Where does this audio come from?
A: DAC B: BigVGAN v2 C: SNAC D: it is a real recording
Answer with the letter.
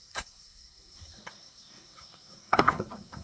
C